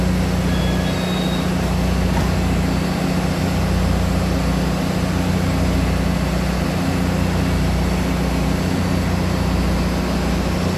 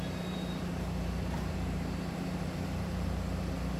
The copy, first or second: second